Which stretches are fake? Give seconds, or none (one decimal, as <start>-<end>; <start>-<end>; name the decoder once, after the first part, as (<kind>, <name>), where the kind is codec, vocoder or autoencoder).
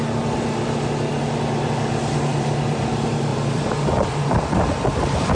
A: 2.3-2.9 (vocoder, BigVGAN v2); 3.3-4.2